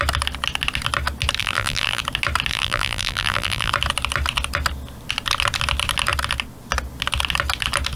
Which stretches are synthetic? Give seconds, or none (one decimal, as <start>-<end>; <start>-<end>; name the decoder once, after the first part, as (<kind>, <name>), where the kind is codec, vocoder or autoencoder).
1.4-2.0 (vocoder, BigVGAN v2); 2.5-3.7